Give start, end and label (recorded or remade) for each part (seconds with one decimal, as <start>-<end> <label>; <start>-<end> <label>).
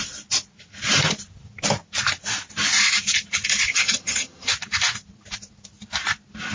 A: 0.0-3.7 recorded; 3.7-4.5 remade; 4.5-6.5 recorded